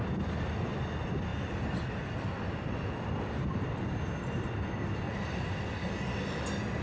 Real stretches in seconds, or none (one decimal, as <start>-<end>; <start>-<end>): 0.0-6.8